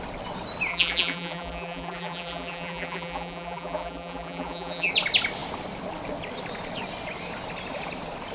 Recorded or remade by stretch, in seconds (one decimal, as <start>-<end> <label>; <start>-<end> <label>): 0.0-0.7 recorded; 0.7-4.9 remade; 4.9-8.3 recorded